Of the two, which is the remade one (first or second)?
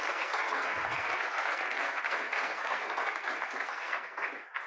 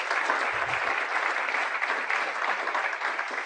first